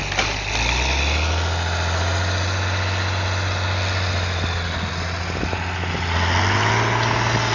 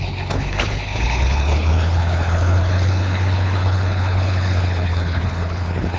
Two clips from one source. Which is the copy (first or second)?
second